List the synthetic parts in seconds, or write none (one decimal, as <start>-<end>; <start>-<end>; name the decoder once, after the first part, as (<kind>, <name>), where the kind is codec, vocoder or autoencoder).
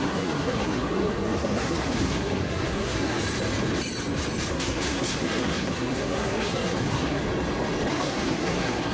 0.0-3.2 (codec, SNAC); 4.5-7.2; 7.9-8.9